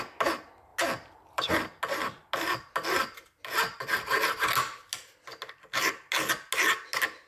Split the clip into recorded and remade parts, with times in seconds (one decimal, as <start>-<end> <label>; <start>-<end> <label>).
0.0-7.3 recorded